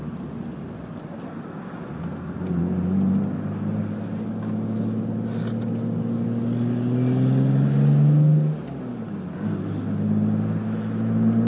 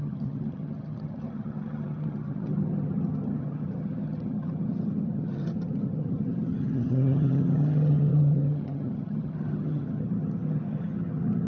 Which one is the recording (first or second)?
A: first